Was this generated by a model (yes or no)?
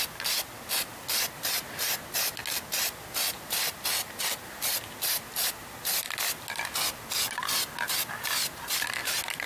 no